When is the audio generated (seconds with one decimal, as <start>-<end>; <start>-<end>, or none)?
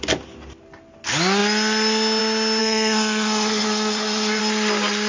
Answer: 2.6-4.4